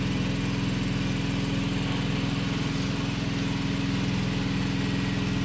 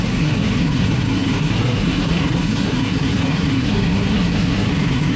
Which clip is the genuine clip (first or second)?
first